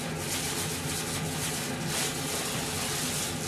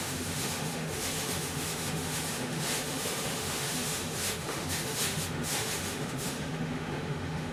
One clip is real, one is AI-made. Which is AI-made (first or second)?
second